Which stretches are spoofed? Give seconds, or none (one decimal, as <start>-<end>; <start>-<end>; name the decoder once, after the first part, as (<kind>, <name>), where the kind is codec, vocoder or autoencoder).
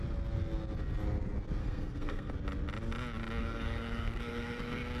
1.6-2.3 (codec, SNAC); 3.4-5.0